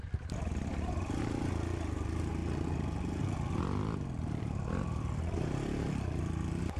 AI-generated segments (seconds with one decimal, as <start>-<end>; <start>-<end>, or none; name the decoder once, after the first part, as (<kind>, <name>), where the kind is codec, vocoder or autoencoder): 0.7-1.2 (vocoder, BigVGAN v2)